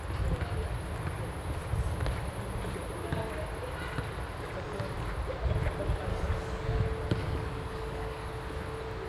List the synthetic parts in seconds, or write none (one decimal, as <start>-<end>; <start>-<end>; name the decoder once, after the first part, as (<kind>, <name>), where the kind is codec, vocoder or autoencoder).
6.1-6.8 (codec, DAC); 7.2-8.3